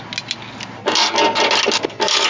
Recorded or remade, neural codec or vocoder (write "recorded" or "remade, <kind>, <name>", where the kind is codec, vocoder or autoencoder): recorded